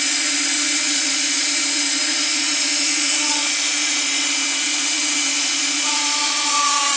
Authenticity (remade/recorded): remade